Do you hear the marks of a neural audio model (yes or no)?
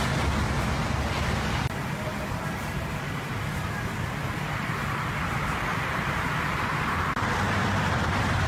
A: no